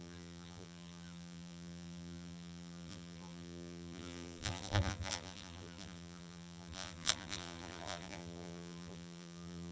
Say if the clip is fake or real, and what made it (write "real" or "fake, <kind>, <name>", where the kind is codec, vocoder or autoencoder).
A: fake, vocoder, BigVGAN v2